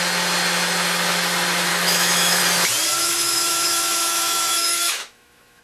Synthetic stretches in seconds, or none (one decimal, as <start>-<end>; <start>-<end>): 1.7-2.4; 3.0-5.6